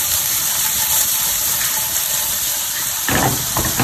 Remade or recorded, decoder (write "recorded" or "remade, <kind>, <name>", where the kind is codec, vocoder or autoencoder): remade, vocoder, BigVGAN v2